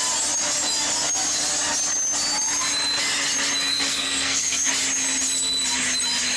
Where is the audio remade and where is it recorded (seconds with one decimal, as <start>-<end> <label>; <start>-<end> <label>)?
0.0-3.7 recorded; 3.7-4.7 remade; 4.7-6.4 recorded